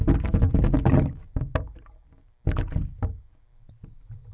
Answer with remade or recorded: recorded